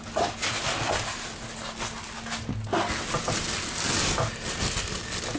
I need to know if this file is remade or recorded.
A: recorded